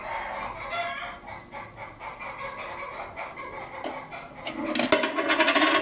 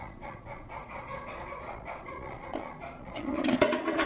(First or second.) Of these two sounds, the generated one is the second